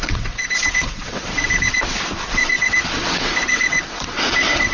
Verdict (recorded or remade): remade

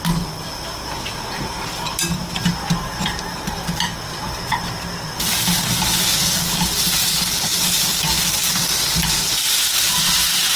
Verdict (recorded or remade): recorded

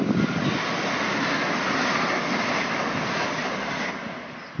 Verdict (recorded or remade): recorded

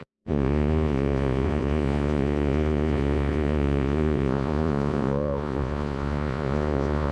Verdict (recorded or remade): remade